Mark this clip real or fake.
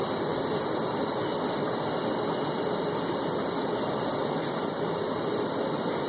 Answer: real